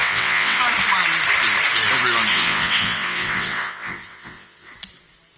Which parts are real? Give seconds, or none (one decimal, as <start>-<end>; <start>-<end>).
0.6-2.3; 4.7-5.4